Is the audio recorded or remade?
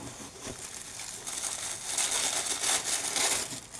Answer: recorded